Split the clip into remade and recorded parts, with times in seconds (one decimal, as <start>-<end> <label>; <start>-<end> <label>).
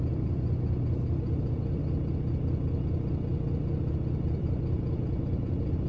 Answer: 0.0-1.8 remade; 1.8-4.4 recorded; 4.4-5.9 remade